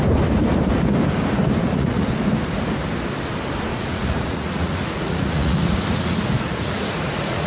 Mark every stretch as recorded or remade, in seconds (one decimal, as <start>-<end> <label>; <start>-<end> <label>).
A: 0.0-1.6 recorded; 1.6-2.1 remade; 2.1-3.7 recorded; 3.7-7.5 remade